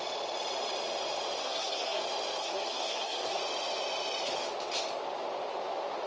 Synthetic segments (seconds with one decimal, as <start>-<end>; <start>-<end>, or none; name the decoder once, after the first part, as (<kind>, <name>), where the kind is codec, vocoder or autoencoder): 1.4-2.0 (codec, SNAC); 2.4-3.4